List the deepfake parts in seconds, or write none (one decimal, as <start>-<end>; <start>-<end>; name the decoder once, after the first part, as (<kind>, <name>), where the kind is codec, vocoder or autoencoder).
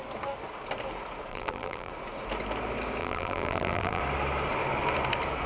1.3-1.9 (vocoder, BigVGAN v2); 3.0-4.0